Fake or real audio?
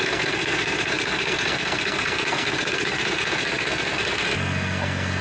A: fake